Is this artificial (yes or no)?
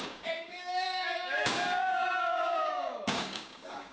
yes